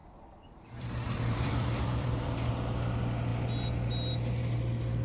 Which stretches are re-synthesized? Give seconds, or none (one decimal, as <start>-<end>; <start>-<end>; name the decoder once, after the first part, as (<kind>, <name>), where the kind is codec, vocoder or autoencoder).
0.0-2.5 (vocoder, BigVGAN v2)